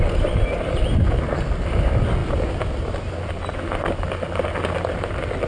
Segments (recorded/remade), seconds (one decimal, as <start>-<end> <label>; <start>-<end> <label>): 0.0-5.5 recorded